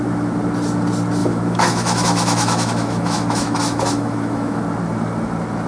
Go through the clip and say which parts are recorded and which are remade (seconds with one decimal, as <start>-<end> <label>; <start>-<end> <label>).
0.0-1.2 recorded; 1.2-4.6 remade; 4.6-5.7 recorded